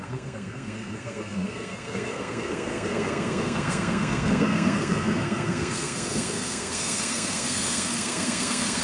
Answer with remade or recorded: remade